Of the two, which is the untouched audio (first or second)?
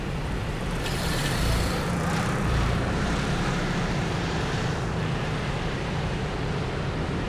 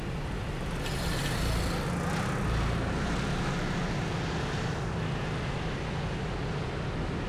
second